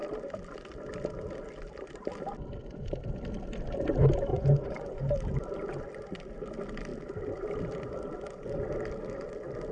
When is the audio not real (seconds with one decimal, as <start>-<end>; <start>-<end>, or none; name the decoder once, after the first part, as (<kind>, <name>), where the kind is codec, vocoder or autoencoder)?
4.3-5.0 (vocoder, Vocos)